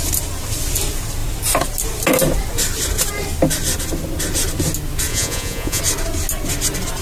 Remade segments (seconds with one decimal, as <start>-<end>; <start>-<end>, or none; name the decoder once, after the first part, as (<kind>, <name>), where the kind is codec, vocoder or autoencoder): 5.1-5.8 (vocoder, Vocos)